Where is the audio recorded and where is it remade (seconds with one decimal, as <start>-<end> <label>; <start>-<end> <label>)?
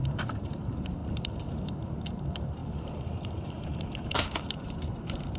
0.0-5.4 remade